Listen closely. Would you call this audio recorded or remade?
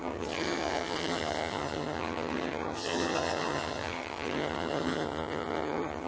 remade